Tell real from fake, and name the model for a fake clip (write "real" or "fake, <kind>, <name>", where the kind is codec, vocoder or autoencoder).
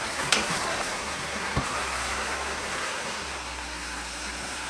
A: fake, codec, SNAC